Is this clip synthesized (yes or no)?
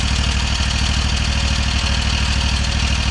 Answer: no